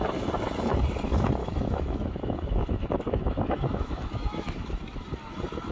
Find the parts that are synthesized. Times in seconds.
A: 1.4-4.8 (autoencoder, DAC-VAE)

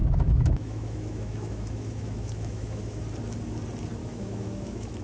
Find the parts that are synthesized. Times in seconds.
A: 0.0-3.0 (autoencoder, DAC-VAE); 4.0-5.0

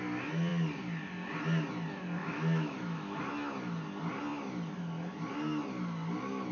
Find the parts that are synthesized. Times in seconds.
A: 2.2-3.2 (autoencoder, DAC-VAE)

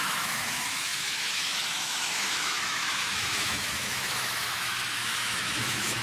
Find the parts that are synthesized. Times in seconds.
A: 0.0-6.0 (autoencoder, DAC-VAE)

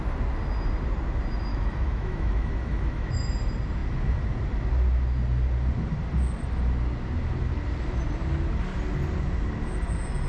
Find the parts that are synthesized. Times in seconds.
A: 1.5-3.3 (autoencoder, DAC-VAE)

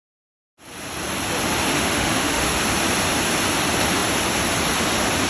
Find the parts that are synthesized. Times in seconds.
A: 1.7-2.6 (autoencoder, DAC-VAE)